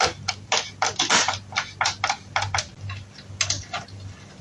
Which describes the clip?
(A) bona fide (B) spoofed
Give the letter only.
A